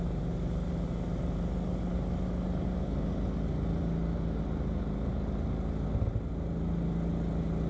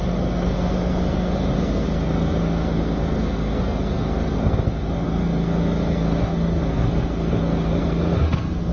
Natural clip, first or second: first